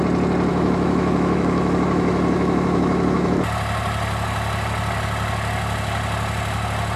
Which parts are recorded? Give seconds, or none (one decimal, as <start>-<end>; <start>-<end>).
0.0-0.5; 3.4-7.0